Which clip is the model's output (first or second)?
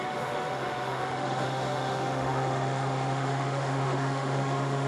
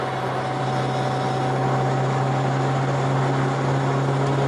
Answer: first